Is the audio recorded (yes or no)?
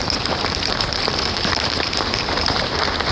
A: no